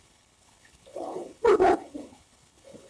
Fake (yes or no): yes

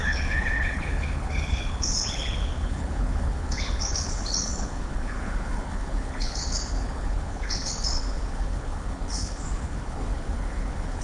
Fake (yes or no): yes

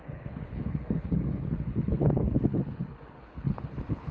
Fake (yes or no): yes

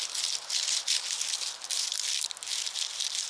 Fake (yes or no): no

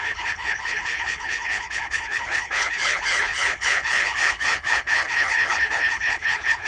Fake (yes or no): yes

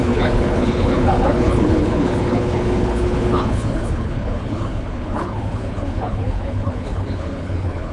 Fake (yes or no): yes